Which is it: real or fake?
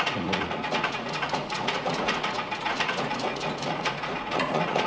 fake